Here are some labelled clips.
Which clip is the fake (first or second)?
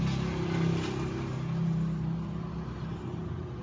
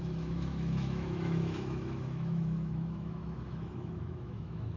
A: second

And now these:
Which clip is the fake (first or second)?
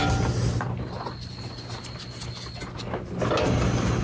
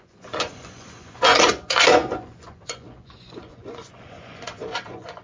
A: second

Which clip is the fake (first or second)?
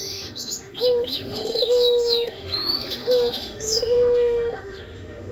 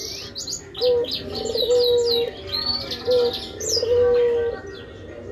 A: first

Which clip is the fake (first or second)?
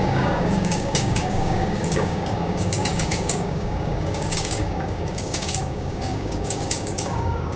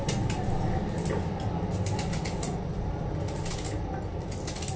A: first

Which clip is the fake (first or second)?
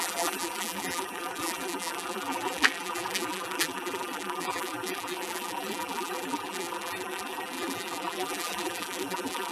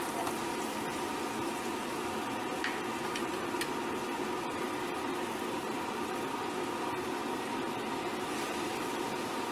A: first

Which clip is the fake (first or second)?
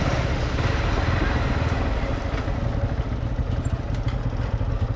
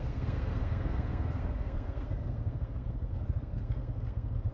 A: second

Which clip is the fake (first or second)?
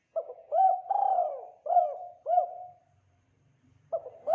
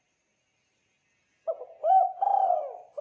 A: first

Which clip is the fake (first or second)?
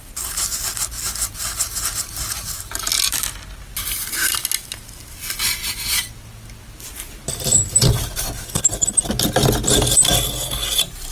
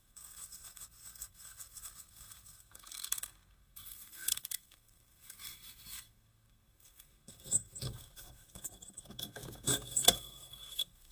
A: second